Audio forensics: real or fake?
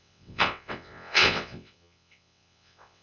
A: fake